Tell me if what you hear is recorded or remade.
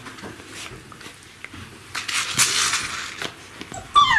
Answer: recorded